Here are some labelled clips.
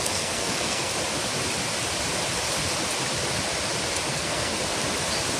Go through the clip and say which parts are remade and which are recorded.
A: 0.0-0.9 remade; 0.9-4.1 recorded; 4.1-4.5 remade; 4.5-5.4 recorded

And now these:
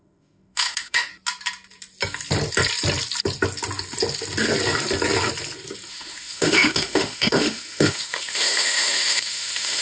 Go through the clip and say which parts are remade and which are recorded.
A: 0.0-1.1 remade; 1.1-5.9 recorded; 5.9-9.8 remade